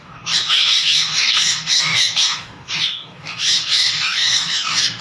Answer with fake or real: fake